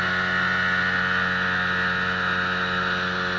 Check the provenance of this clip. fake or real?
real